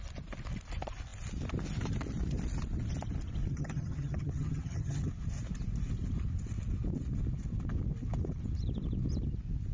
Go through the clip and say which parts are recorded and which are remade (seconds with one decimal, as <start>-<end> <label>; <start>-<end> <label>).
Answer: 0.0-3.5 recorded; 3.5-5.1 remade; 5.1-9.7 recorded